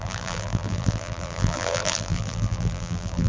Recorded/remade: remade